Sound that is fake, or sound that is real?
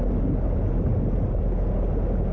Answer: real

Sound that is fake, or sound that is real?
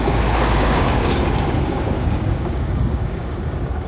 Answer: fake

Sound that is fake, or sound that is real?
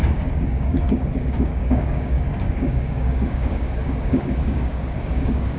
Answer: fake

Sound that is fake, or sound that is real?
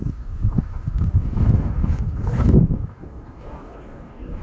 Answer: fake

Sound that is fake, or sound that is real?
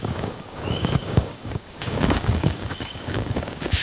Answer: fake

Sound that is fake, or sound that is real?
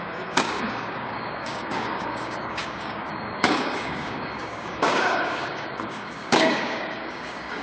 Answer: fake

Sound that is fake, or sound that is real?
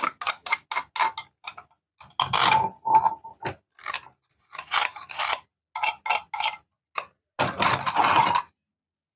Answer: real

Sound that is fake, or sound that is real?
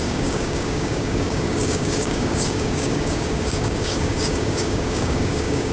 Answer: fake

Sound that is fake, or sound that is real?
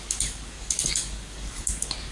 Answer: fake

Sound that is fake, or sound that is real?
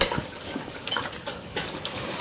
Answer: fake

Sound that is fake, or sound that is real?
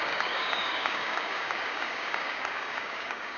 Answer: fake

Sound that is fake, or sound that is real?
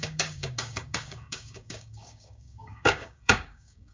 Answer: fake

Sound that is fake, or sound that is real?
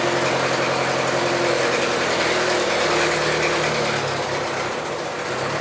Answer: real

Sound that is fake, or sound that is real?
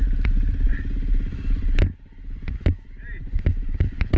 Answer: real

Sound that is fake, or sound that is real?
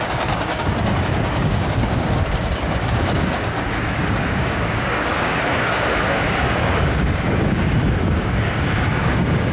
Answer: fake